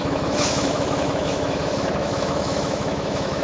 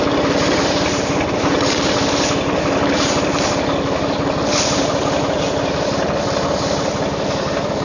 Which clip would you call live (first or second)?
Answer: second